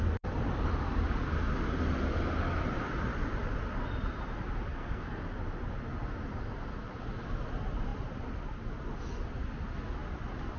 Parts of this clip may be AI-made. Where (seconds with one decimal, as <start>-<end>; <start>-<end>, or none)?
4.7-5.2